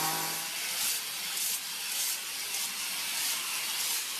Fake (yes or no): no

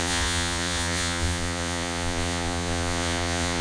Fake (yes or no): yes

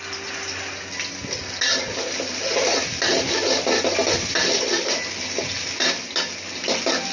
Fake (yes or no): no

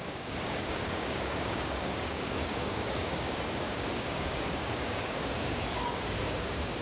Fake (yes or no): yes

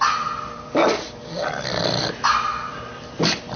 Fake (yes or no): no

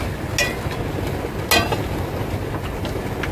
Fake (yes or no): no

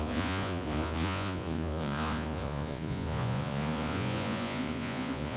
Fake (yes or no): yes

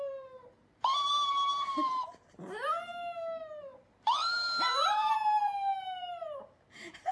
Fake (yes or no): yes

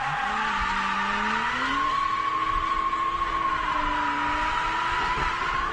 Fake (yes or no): no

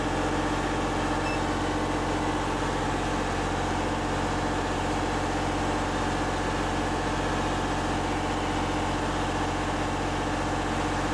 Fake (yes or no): no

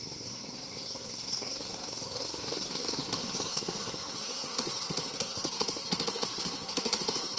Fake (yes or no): yes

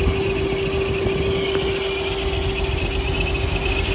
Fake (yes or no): no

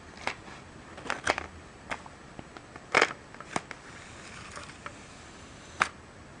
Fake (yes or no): no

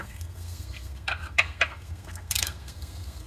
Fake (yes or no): yes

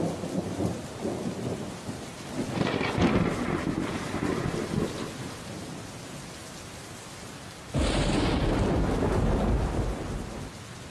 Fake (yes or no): no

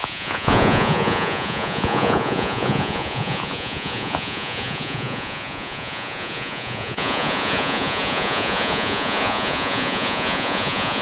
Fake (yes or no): yes